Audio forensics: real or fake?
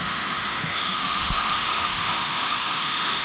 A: fake